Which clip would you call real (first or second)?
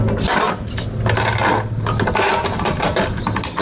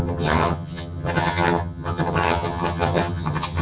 first